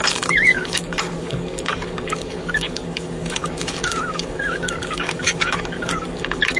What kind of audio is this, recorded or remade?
remade